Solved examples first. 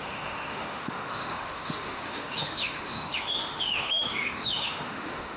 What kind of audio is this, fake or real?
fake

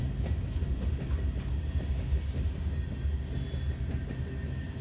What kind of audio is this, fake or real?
real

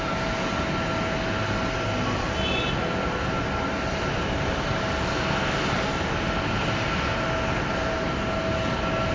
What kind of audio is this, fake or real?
real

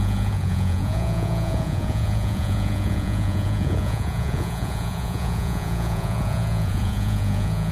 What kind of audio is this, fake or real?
fake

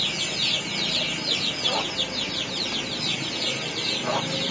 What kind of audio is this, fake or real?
real